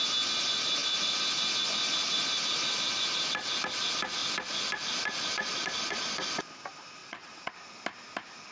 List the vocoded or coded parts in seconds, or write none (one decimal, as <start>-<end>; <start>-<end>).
7.0-7.5